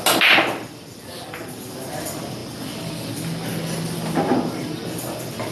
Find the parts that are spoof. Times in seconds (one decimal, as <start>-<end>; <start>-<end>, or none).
none